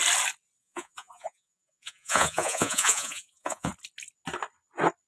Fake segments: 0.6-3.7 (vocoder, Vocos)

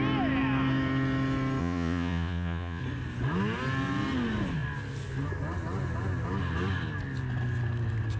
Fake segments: 1.6-2.8 (vocoder, Vocos)

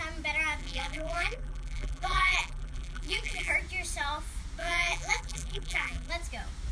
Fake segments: 0.6-3.5 (vocoder, BigVGAN v2); 4.6-6.1

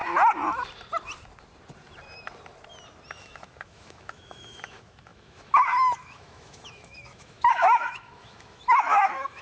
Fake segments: 3.1-9.4 (autoencoder, DAC-VAE)

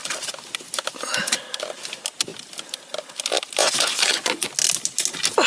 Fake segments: 3.6-4.5 (vocoder, Vocos)